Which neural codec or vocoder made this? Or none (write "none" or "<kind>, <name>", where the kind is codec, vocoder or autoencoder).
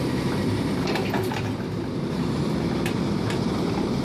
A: vocoder, BigVGAN v2